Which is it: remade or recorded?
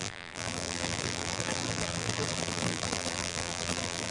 remade